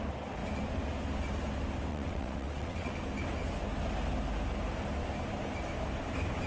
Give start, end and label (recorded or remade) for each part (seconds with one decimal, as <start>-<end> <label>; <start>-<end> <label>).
0.0-1.9 recorded; 1.9-2.9 remade; 2.9-6.5 recorded